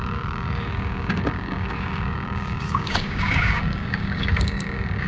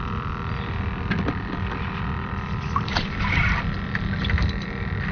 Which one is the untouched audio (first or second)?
second